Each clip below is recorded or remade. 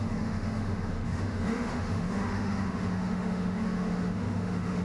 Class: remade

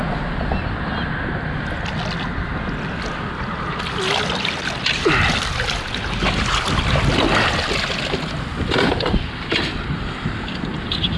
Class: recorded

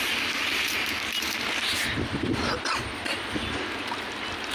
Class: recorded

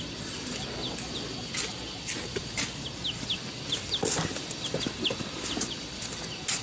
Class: recorded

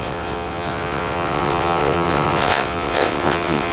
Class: remade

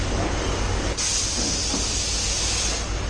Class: recorded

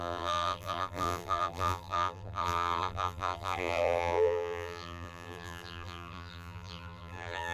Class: remade